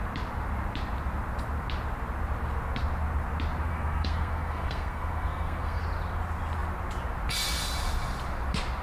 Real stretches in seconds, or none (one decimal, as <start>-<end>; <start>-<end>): 0.0-3.7; 5.8-8.8